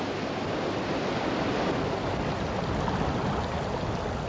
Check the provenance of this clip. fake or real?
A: real